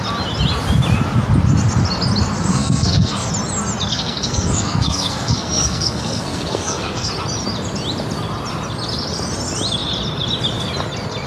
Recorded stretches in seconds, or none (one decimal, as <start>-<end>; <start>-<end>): 0.0-2.5; 3.3-3.9; 7.1-11.3